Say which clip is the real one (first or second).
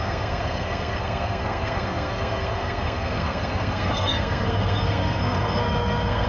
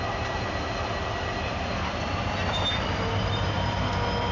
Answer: second